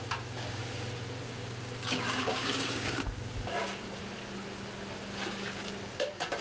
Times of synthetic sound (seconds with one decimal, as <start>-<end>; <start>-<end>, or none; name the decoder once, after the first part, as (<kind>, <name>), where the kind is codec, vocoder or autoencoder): 0.0-0.6 (codec, DAC); 1.2-4.0; 5.0-6.4